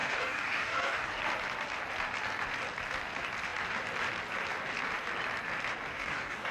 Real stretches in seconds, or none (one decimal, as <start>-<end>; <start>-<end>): 1.2-5.9